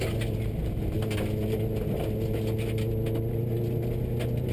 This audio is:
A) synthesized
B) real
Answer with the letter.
B